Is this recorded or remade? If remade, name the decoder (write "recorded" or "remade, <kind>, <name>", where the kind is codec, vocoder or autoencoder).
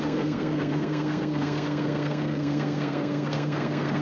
remade, codec, SNAC